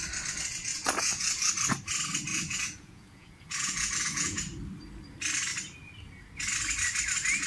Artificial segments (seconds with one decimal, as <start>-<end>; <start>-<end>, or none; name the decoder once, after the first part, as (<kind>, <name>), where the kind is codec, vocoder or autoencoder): 0.7-1.5 (vocoder, Vocos); 2.3-4.4